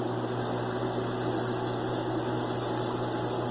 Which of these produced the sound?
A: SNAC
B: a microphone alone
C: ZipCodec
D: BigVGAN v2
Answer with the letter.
B